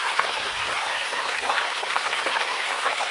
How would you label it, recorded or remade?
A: remade